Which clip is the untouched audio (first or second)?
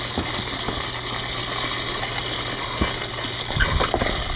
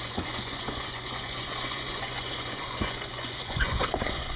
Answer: first